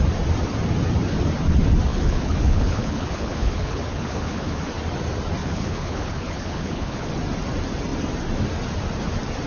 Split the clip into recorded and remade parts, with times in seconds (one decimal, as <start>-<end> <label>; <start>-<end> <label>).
0.0-1.9 recorded; 1.9-4.7 remade; 4.7-5.4 recorded; 5.4-7.1 remade; 7.1-9.5 recorded